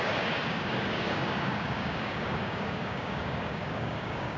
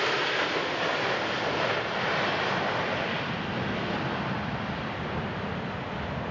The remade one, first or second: first